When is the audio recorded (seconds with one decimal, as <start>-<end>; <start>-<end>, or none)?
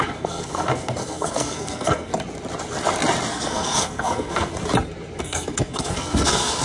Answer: 2.1-3.3; 4.5-5.2